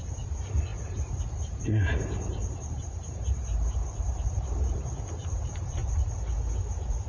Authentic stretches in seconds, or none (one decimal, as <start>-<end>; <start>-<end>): 5.8-7.1